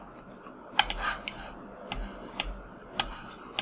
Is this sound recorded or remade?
recorded